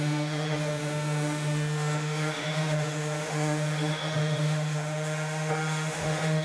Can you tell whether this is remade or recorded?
remade